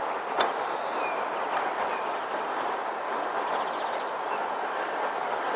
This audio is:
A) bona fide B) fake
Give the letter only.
A